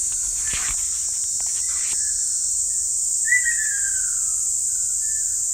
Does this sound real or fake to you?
real